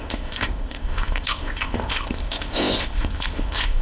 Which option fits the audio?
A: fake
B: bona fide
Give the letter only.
A